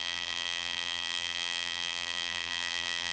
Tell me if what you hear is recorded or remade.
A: remade